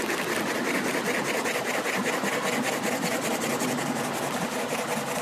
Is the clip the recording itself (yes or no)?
yes